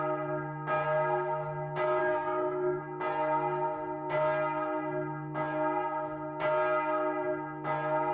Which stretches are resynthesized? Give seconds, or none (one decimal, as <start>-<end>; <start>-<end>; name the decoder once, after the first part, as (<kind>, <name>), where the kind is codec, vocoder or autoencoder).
2.0-2.8 (codec, SNAC)